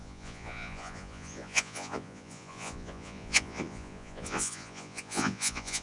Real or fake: fake